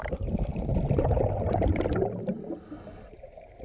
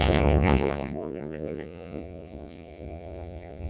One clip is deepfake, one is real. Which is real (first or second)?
first